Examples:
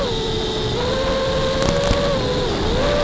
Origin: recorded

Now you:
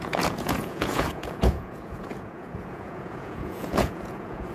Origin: remade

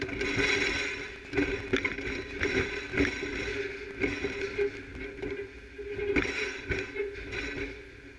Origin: recorded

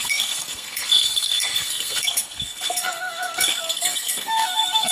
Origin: remade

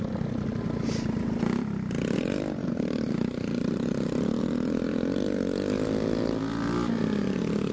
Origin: recorded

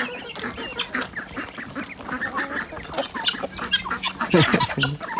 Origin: recorded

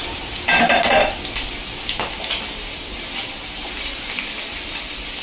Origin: recorded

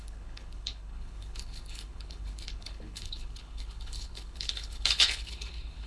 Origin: remade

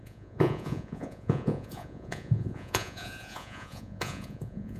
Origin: remade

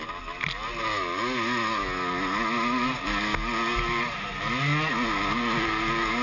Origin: recorded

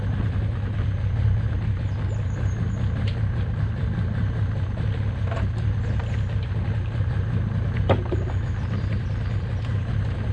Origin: recorded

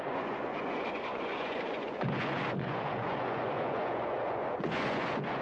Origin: remade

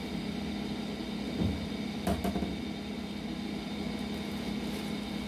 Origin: recorded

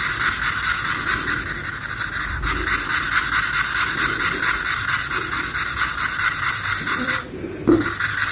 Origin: recorded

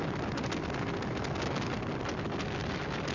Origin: recorded